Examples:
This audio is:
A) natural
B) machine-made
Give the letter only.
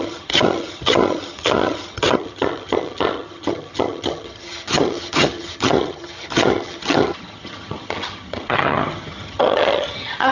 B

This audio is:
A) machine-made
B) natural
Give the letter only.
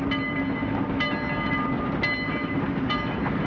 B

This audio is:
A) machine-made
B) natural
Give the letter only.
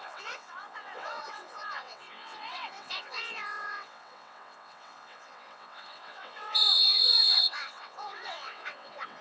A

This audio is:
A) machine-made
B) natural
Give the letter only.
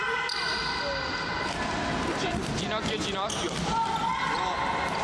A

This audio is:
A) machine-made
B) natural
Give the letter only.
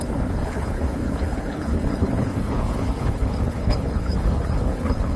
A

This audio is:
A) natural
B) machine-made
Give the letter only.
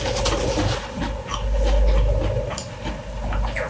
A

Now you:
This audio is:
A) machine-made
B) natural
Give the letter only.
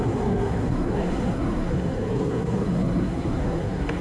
A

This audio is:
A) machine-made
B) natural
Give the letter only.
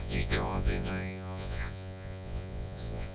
A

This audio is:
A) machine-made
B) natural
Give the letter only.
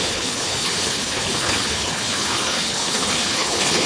A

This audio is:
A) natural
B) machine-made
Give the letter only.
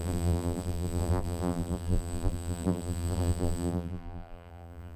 B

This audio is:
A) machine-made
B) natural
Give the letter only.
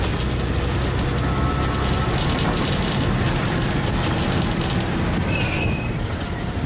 B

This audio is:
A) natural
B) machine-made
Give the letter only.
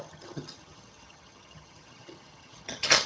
B